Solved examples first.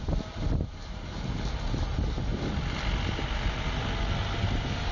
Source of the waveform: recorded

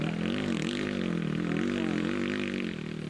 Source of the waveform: recorded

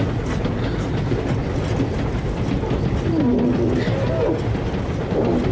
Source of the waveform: recorded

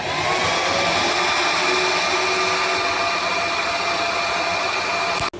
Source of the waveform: recorded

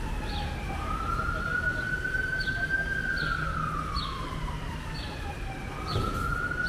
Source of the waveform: recorded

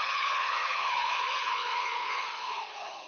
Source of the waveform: remade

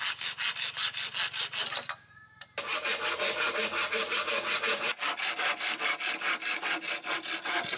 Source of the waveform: recorded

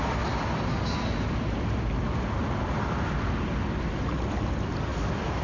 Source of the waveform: recorded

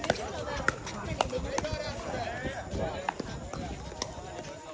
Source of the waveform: recorded